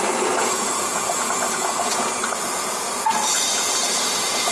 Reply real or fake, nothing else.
fake